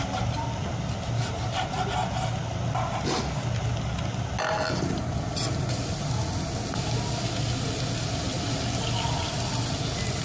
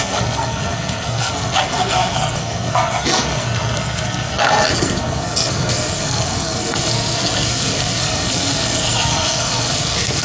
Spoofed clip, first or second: second